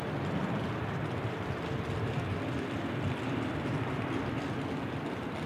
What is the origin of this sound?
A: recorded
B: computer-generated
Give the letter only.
A